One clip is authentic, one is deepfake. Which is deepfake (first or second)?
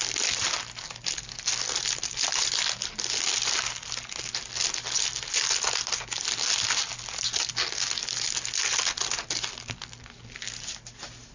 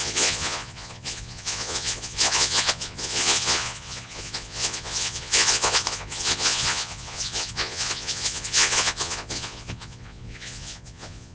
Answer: second